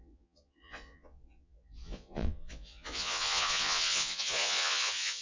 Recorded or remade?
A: remade